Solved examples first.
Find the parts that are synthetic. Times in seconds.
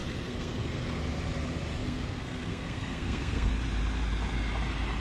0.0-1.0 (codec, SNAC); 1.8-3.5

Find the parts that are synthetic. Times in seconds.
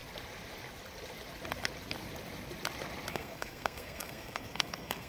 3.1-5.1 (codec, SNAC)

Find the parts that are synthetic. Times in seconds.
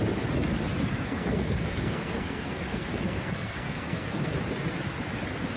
0.9-4.3 (codec, SNAC)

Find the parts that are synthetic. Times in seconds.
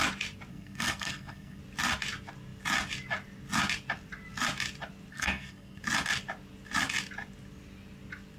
0.5-1.6 (codec, SNAC); 5.1-5.8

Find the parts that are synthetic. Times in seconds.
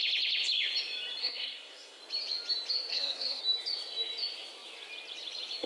1.2-2.0 (codec, SNAC); 2.9-3.4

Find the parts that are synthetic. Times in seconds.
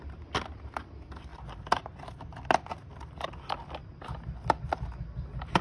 none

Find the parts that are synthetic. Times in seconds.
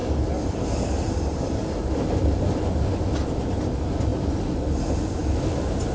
none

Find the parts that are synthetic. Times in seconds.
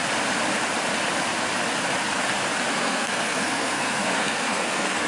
2.7-5.1 (codec, SNAC)